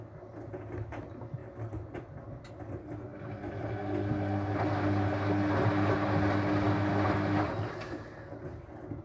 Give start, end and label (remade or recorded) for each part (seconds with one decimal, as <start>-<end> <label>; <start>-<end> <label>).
0.0-1.4 recorded; 1.4-2.5 remade; 2.5-9.0 recorded